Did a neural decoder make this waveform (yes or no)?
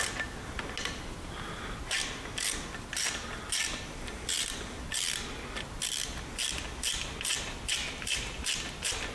no